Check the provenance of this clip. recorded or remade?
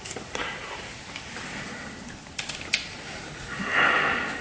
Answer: recorded